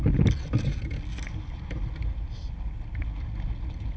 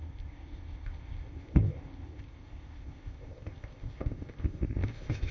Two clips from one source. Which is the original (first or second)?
first